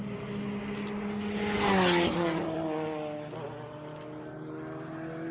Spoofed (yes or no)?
no